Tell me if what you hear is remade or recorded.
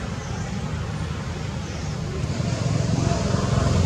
recorded